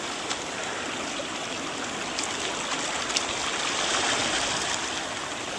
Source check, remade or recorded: recorded